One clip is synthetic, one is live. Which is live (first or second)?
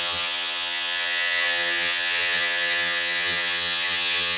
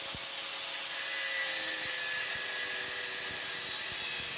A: second